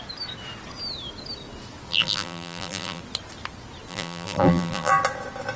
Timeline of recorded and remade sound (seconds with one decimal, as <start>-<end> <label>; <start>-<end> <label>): 0.0-1.9 recorded; 1.9-3.0 remade; 3.0-3.9 recorded; 3.9-4.9 remade; 4.9-5.6 recorded